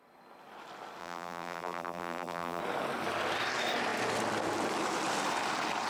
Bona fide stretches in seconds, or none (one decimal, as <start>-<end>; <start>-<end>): 0.0-1.0; 2.6-5.9